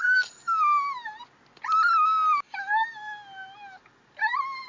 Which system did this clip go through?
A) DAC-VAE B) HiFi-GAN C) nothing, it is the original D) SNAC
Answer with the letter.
C